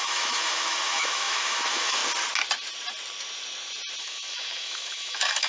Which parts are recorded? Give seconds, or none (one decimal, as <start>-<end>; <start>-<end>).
2.0-4.0